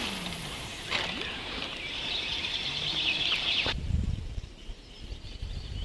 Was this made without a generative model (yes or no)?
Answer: no